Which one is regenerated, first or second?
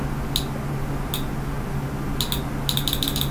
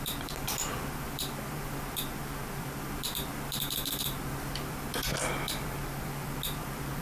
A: second